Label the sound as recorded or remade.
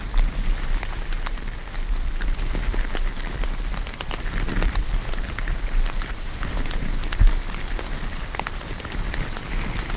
remade